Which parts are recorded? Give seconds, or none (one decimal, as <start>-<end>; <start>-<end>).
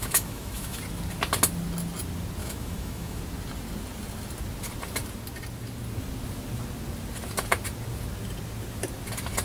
0.8-2.4; 3.2-9.4